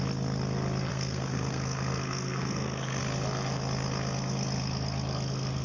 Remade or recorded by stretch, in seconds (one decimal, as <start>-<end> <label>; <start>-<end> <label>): 0.0-0.9 recorded; 0.9-3.0 remade; 3.0-5.6 recorded